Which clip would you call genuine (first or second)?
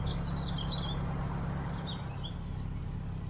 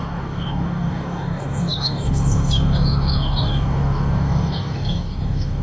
first